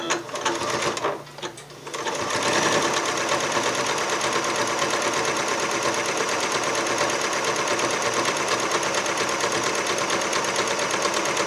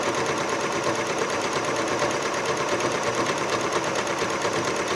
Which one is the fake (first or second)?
second